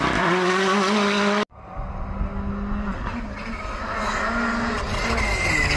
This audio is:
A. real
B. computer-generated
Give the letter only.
A